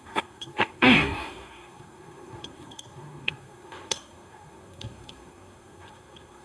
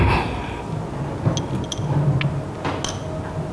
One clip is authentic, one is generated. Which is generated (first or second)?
first